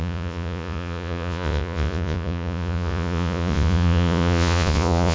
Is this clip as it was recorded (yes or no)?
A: no